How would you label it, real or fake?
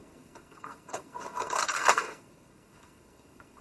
fake